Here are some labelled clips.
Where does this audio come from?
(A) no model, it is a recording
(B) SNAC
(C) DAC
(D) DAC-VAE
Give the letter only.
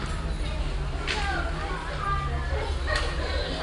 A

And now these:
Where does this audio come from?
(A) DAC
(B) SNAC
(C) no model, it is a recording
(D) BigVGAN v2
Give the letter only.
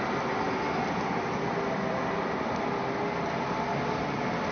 C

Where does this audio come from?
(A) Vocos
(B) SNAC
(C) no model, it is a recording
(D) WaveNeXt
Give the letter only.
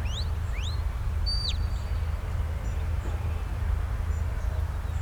C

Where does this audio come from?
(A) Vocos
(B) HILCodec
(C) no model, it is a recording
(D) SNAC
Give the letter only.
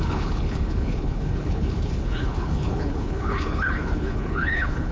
B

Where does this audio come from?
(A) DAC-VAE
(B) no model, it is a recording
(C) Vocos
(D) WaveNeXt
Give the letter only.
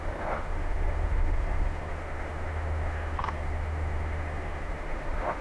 A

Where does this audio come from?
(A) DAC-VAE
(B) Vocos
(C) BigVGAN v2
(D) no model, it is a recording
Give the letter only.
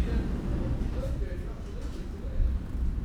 D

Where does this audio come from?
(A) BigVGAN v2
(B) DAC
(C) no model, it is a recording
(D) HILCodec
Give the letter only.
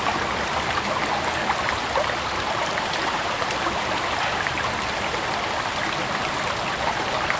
A